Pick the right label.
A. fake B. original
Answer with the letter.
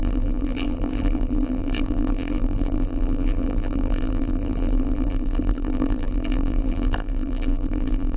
A